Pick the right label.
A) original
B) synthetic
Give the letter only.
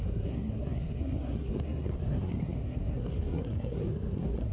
B